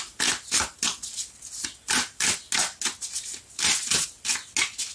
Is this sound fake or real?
real